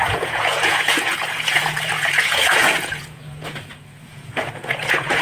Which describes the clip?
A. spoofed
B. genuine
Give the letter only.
A